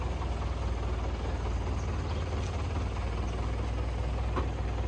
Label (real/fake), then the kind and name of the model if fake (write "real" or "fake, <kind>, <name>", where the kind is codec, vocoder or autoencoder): real